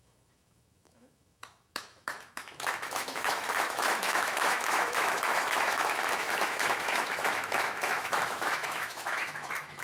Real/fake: fake